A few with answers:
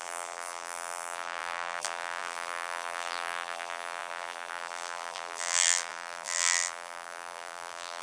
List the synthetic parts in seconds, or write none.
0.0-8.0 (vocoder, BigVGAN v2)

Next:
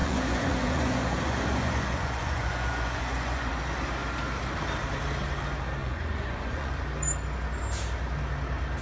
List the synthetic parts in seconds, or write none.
0.0-3.5 (vocoder, Vocos); 5.8-6.7